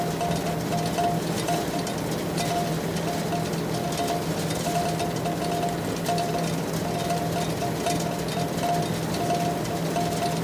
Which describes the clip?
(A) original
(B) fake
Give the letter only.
A